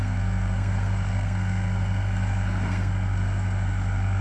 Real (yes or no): no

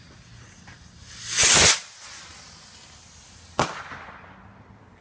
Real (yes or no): yes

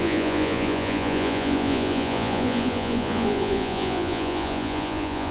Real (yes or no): no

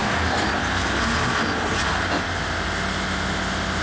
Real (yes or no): yes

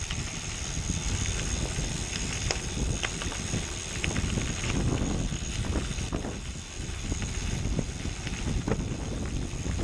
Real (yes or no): yes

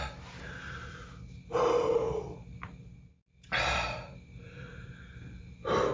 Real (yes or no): yes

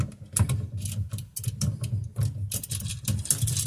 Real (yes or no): yes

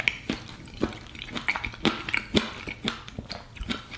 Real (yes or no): yes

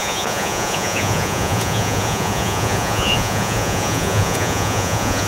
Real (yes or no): no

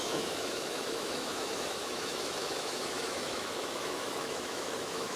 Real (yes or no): no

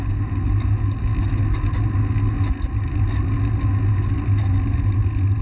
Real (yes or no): yes